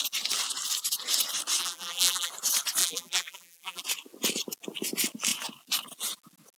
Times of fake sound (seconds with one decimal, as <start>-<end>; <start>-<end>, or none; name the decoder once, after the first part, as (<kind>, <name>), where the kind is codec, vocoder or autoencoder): 1.6-2.3 (vocoder, BigVGAN v2); 2.8-3.8